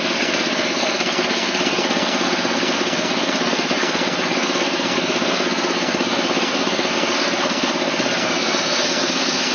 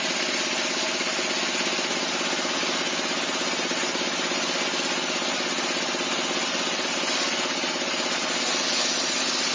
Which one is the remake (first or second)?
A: first